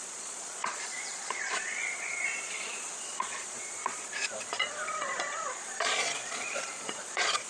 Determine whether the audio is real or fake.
fake